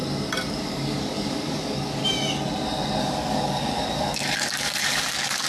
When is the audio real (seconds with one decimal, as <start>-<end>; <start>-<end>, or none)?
0.0-0.5; 2.0-3.0